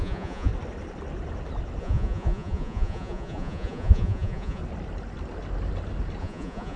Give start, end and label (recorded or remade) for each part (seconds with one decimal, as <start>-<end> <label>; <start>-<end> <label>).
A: 0.0-0.5 remade; 0.5-1.8 recorded; 1.8-4.6 remade; 4.6-6.2 recorded; 6.2-6.8 remade